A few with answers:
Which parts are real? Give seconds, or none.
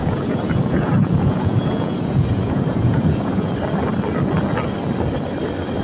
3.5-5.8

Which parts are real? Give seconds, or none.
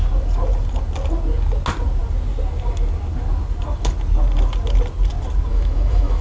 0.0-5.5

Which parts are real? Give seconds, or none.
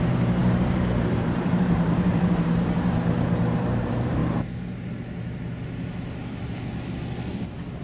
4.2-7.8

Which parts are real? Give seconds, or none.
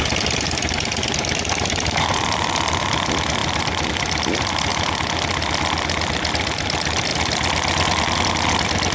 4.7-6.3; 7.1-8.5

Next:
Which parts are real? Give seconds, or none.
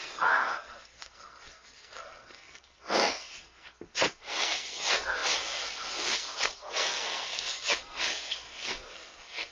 none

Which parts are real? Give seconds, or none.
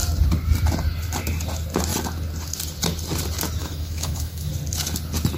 0.0-3.6; 4.5-5.4